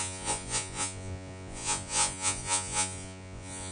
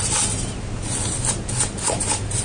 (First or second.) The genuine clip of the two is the second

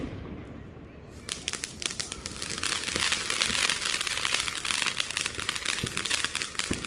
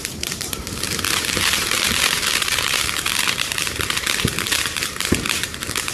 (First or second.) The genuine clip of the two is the first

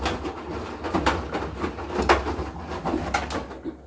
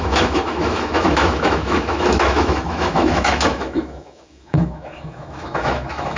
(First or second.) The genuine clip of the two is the first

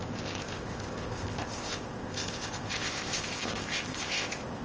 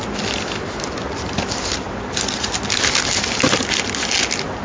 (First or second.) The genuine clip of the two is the second